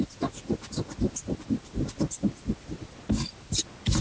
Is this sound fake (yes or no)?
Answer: no